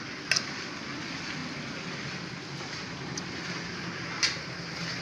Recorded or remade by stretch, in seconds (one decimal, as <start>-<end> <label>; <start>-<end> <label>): 0.0-5.0 recorded